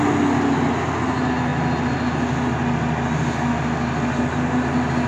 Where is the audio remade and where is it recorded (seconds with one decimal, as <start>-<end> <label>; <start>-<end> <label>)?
0.0-5.1 recorded